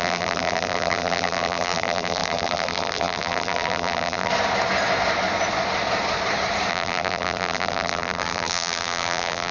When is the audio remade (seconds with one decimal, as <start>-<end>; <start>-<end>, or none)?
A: 0.0-4.3; 6.7-9.5